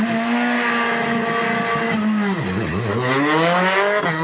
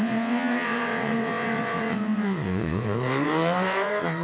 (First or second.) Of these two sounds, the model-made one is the second